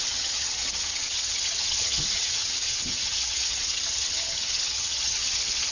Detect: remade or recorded remade